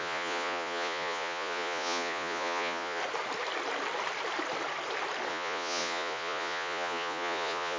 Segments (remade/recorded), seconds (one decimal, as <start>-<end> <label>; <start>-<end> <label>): 0.0-3.0 remade; 3.0-5.3 recorded; 5.3-7.8 remade